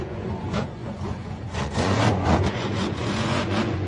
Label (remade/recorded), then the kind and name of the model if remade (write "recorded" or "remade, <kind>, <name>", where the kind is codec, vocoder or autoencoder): remade, vocoder, Vocos